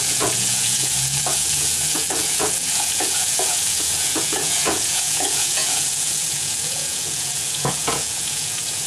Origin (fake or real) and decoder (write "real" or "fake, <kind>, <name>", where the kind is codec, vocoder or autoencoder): fake, vocoder, Vocos